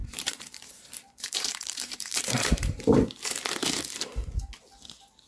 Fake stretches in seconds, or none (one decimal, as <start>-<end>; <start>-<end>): 0.0-3.2